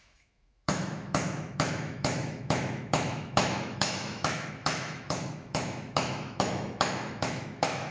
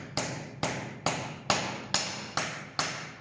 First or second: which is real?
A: second